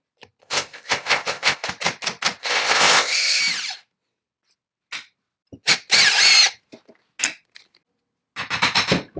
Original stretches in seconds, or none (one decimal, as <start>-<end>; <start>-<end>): 0.0-0.4; 1.7-2.4; 3.4-9.2